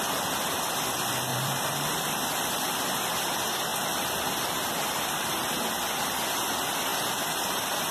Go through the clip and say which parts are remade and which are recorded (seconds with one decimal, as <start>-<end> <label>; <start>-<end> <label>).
0.0-1.3 recorded; 1.3-2.6 remade; 2.6-6.9 recorded; 6.9-7.9 remade